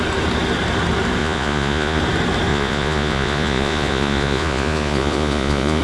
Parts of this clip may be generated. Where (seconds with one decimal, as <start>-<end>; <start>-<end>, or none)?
1.2-2.0; 2.5-5.8